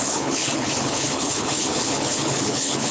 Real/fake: fake